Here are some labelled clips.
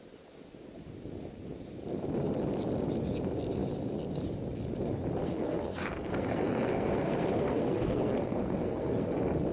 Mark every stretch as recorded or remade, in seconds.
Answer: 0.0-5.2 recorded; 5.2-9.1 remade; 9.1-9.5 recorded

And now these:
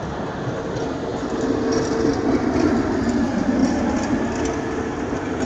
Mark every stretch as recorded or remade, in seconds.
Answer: 0.0-5.5 recorded

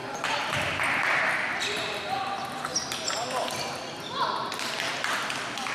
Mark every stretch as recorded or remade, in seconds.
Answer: 0.0-5.7 recorded

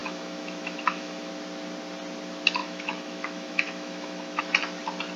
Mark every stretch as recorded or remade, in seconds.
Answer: 0.0-1.3 remade; 1.3-2.6 recorded; 2.6-4.4 remade; 4.4-5.2 recorded